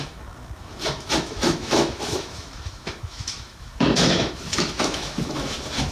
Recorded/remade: remade